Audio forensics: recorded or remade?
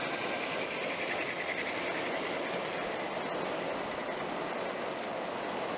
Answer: recorded